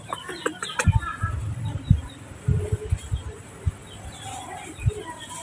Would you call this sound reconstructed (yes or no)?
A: no